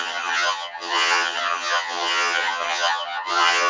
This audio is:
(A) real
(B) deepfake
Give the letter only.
B